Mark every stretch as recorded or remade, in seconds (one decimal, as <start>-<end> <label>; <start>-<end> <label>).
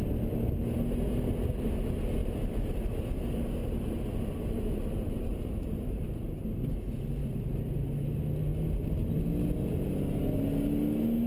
0.0-2.2 recorded; 2.2-6.2 remade; 6.2-7.2 recorded; 7.2-7.7 remade; 7.7-11.3 recorded